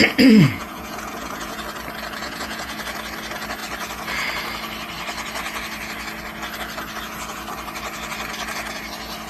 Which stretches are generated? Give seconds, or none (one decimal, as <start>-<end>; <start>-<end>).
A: 0.0-1.6; 2.2-2.8